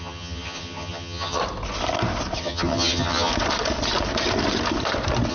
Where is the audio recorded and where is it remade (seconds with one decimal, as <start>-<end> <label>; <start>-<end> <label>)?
0.0-1.4 remade; 1.4-2.4 recorded; 2.4-3.3 remade; 3.3-5.3 recorded